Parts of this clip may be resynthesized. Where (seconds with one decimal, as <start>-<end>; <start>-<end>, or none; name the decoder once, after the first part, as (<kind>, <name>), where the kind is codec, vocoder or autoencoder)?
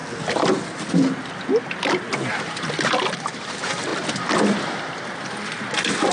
none